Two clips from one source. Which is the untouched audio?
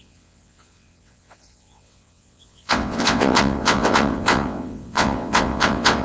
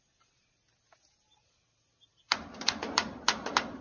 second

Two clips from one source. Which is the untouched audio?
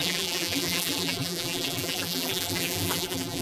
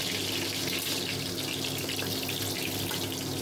second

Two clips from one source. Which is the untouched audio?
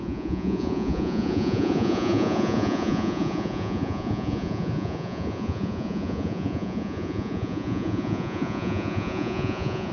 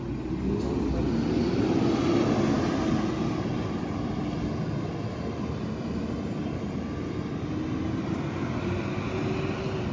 second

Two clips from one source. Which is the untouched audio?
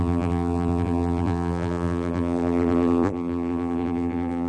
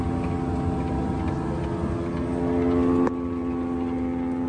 second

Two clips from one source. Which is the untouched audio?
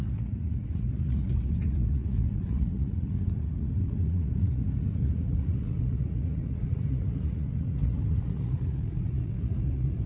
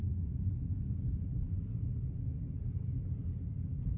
second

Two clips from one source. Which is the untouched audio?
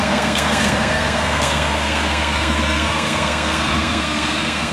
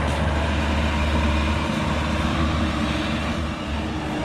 second